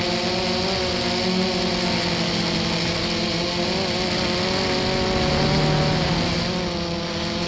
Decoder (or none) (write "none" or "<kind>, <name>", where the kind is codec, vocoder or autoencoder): none